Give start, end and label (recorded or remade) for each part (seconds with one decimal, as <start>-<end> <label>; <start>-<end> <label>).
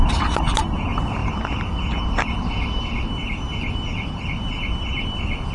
0.0-5.5 remade